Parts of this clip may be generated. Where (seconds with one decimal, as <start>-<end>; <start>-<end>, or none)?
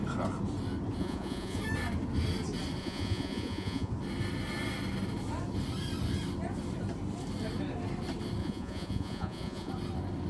1.0-1.6; 2.8-3.9; 8.4-9.7